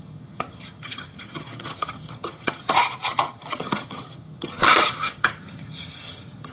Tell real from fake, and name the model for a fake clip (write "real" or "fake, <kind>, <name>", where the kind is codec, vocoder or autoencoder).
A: fake, vocoder, HiFi-GAN